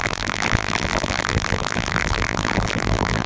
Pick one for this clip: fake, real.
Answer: fake